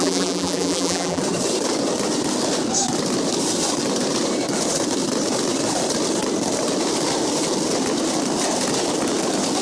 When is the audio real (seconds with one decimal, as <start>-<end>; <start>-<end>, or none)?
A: 1.2-9.6